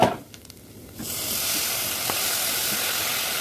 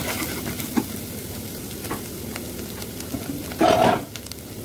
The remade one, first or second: first